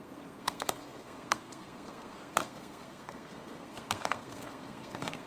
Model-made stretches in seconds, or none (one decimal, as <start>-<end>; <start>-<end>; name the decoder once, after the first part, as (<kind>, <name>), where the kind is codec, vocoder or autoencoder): 0.0-5.3 (codec, SNAC)

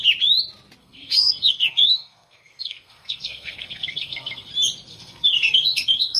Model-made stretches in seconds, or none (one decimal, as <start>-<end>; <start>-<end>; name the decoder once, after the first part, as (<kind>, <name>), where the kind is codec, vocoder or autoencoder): 0.8-4.5 (codec, SNAC); 4.9-6.2